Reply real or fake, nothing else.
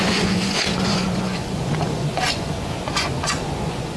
fake